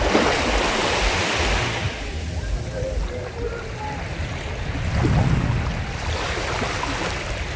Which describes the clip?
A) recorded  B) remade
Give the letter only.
A